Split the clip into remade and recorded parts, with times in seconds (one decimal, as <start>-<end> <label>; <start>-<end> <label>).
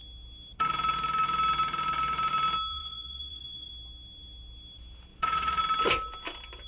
0.0-2.7 recorded; 2.7-3.7 remade; 3.7-5.1 recorded; 5.1-5.6 remade; 5.6-6.7 recorded